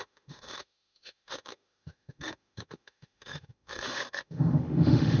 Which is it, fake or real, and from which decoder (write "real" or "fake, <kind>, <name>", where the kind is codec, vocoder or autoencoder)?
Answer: fake, autoencoder, DAC-VAE